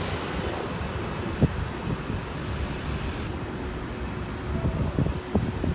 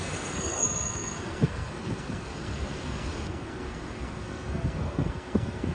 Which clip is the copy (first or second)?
second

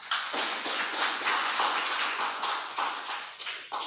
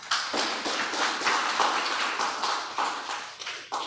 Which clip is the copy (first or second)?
first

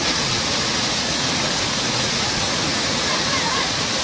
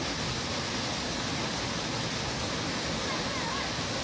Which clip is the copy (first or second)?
first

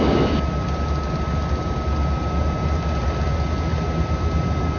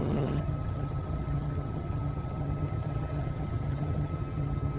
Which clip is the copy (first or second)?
second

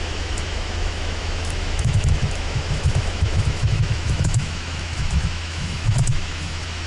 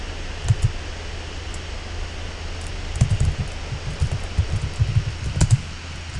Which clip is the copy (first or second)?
first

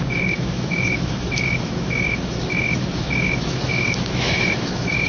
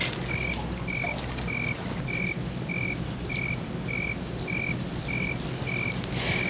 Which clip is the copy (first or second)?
first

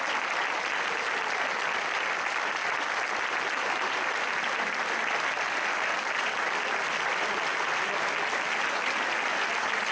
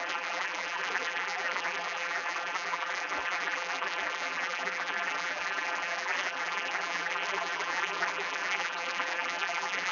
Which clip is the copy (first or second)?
second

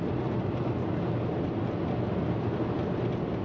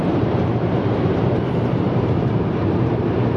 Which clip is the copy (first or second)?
second